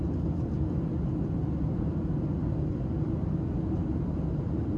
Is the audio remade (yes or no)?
no